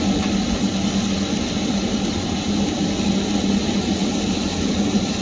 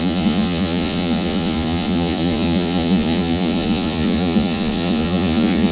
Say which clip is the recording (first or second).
first